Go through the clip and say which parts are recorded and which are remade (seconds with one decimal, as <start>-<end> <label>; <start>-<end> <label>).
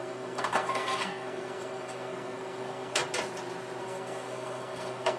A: 0.0-3.0 remade; 3.0-3.8 recorded; 3.8-5.2 remade